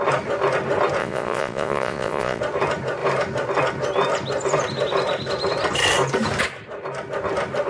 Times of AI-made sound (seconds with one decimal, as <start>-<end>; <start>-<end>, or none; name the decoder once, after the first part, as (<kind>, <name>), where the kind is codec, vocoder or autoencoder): 1.0-2.4 (vocoder, Vocos)